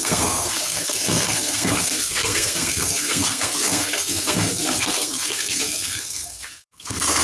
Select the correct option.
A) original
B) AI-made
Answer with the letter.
B